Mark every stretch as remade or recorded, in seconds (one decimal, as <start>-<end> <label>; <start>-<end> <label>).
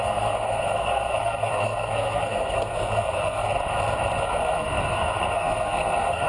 0.0-3.6 remade; 3.6-4.2 recorded; 4.2-6.3 remade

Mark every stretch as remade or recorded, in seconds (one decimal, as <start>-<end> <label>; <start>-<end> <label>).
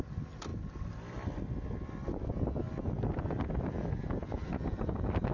0.0-5.3 recorded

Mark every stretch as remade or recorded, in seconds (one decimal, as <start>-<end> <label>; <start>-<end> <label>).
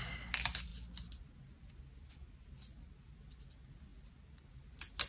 0.0-5.1 recorded